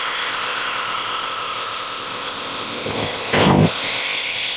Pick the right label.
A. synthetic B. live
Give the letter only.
A